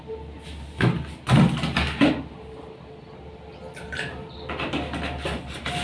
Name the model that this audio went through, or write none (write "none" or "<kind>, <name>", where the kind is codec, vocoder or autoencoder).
none